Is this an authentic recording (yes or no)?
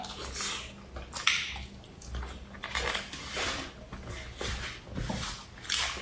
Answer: yes